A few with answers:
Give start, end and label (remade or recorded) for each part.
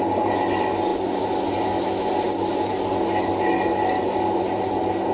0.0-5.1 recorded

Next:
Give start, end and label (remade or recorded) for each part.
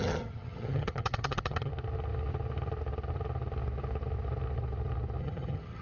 0.0-1.7 remade; 1.7-5.2 recorded; 5.2-5.8 remade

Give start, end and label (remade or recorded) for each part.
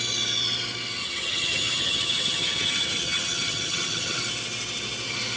0.0-1.0 recorded; 1.0-4.2 remade; 4.2-5.4 recorded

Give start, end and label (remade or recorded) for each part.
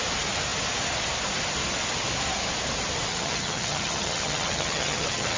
0.0-3.1 recorded; 3.1-5.4 remade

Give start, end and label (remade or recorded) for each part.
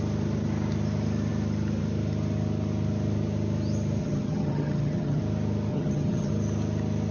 0.0-4.0 recorded; 4.0-5.2 remade; 5.2-5.7 recorded; 5.7-6.3 remade; 6.3-7.1 recorded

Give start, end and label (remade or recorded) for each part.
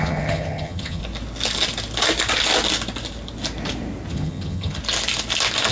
0.0-1.0 remade; 1.0-4.1 recorded; 4.1-4.8 remade; 4.8-5.7 recorded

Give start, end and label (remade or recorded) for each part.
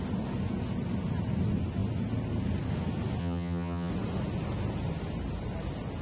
0.0-3.2 recorded; 3.2-3.9 remade; 3.9-6.0 recorded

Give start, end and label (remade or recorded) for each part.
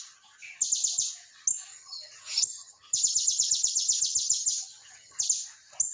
0.0-1.7 recorded; 1.7-5.2 remade; 5.2-5.9 recorded